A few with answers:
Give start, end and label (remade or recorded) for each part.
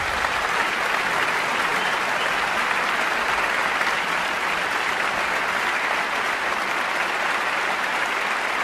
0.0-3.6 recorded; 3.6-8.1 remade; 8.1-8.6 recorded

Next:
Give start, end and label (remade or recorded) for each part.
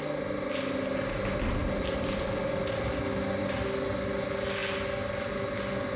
0.0-6.0 recorded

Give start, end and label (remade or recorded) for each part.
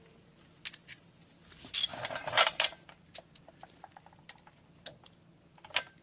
0.0-1.9 recorded; 1.9-3.5 remade; 3.5-6.0 recorded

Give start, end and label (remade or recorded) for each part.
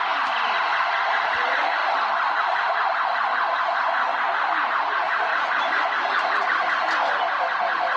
0.0-1.8 recorded; 1.8-4.7 remade; 4.7-5.3 recorded; 5.3-6.4 remade; 6.4-8.0 recorded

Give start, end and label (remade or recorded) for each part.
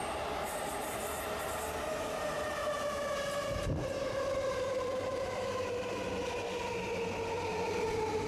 0.0-2.6 recorded; 2.6-6.1 remade; 6.1-7.5 recorded; 7.5-8.3 remade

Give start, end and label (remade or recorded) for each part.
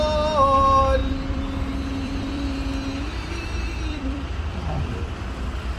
0.0-1.0 recorded; 1.0-2.4 remade; 2.4-2.9 recorded; 2.9-4.8 remade; 4.8-5.8 recorded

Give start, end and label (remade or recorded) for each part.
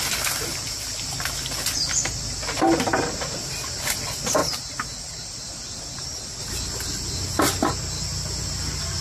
0.0-9.0 recorded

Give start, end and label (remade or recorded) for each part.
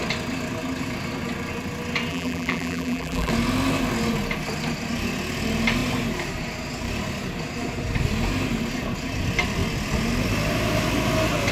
0.0-2.1 recorded; 2.1-3.3 remade; 3.3-11.5 recorded